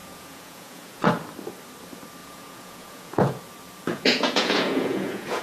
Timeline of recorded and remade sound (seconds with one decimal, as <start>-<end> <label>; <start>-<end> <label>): 0.0-1.1 remade; 1.1-2.2 recorded; 2.2-3.4 remade; 3.4-3.9 recorded; 3.9-5.4 remade